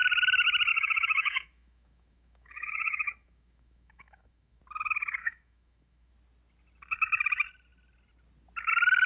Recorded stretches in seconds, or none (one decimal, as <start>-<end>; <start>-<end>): 0.0-0.7; 4.6-5.2; 6.1-9.1